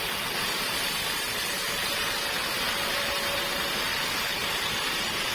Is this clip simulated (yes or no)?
no